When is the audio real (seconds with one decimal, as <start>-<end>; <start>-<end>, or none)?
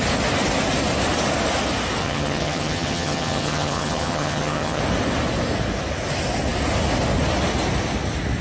0.0-2.0; 4.8-8.4